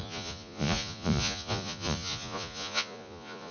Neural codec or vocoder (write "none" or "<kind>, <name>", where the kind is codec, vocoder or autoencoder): vocoder, Vocos